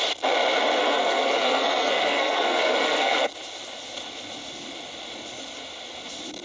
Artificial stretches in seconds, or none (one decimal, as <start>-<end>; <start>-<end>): 0.8-3.3